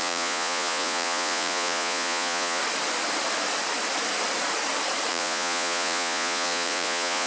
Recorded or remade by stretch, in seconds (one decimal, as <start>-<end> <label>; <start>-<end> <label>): 0.0-2.6 remade; 2.6-5.1 recorded; 5.1-7.3 remade